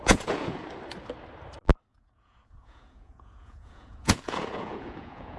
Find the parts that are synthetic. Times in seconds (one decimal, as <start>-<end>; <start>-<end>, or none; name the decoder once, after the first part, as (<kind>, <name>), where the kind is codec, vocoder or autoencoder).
0.0-0.6 (vocoder, Vocos); 1.9-5.4